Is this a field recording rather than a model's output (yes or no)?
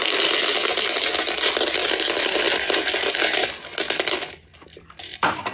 yes